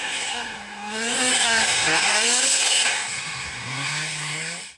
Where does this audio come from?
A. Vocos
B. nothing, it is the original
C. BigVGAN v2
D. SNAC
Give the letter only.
D